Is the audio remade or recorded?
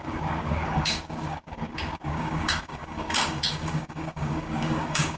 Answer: remade